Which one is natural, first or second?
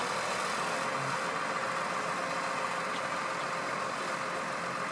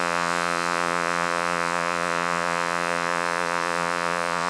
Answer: first